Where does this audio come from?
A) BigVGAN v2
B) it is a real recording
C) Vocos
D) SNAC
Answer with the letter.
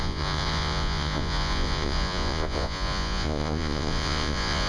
C